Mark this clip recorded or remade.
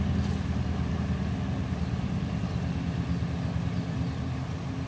remade